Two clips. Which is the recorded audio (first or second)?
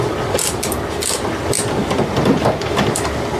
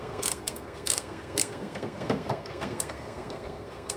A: first